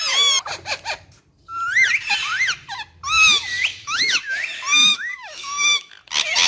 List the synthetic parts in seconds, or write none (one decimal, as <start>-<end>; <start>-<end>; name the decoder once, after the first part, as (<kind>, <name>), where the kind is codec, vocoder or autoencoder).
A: 3.7-4.4 (autoencoder, DAC-VAE); 4.9-5.9